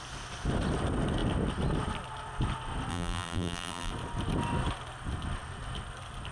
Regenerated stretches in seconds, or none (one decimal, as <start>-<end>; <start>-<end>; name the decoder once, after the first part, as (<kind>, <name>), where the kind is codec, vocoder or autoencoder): 2.9-3.9 (vocoder, BigVGAN v2)